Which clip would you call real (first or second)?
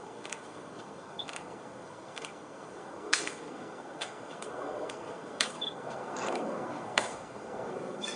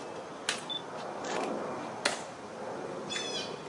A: second